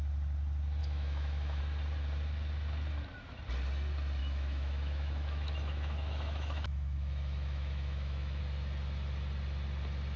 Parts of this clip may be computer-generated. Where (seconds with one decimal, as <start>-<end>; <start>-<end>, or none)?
0.8-1.6; 4.2-8.4